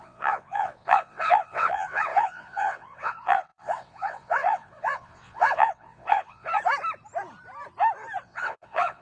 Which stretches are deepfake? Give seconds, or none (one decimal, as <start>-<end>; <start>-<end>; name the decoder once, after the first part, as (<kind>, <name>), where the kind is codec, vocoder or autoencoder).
0.0-6.5 (vocoder, WaveNeXt); 8.2-9.0